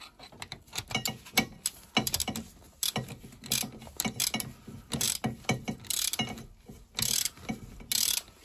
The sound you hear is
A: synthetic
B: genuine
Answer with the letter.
B